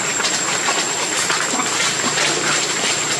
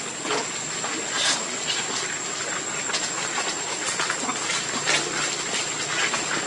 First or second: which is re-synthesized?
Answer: first